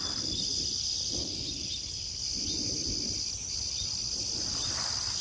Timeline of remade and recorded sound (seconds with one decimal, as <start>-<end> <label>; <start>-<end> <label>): 0.0-5.2 remade